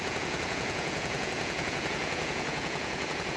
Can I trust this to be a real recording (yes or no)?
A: no